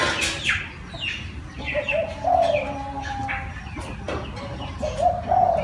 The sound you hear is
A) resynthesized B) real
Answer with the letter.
B